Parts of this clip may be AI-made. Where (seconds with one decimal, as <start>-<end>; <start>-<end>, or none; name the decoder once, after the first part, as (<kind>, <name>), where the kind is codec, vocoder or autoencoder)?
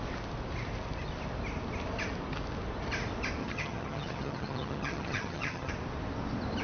3.4-5.7 (vocoder, HiFi-GAN)